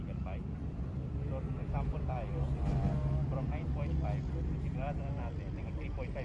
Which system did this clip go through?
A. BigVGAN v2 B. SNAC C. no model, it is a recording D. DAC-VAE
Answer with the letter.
A